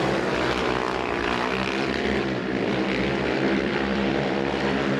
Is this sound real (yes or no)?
no